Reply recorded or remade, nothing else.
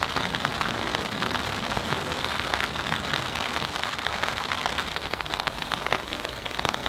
remade